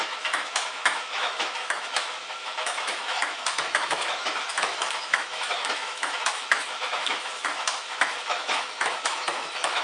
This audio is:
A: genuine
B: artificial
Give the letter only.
B